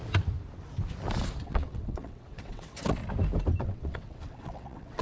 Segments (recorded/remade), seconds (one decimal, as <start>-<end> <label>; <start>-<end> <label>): 0.0-1.4 recorded; 1.4-3.0 remade; 3.0-3.6 recorded; 3.6-5.0 remade